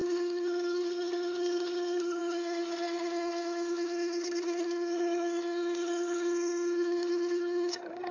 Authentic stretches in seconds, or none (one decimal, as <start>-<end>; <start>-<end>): none